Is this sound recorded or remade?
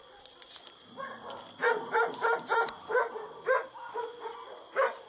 recorded